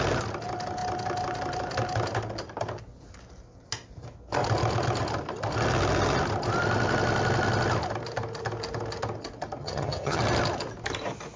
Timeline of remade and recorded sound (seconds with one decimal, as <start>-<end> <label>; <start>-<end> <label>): 0.0-9.6 recorded; 9.6-10.2 remade; 10.2-11.4 recorded